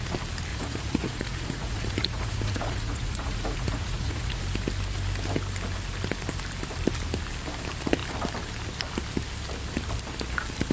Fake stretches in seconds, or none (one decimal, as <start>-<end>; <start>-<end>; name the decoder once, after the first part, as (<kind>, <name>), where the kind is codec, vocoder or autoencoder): 0.5-4.4 (vocoder, Vocos)